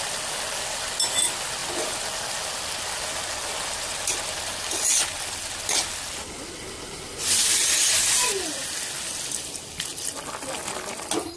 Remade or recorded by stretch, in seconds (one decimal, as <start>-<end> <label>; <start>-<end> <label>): 0.0-11.4 recorded